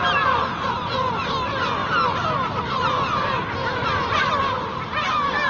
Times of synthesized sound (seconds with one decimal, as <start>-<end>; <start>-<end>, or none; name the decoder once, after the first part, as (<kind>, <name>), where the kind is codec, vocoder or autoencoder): none